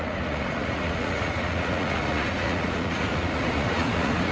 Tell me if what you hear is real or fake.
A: fake